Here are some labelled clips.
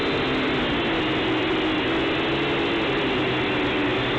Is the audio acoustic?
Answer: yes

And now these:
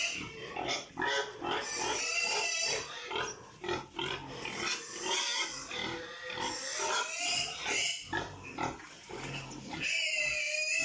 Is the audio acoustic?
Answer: yes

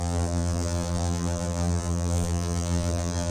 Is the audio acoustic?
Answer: no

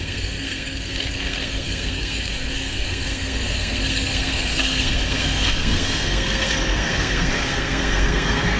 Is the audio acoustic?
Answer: no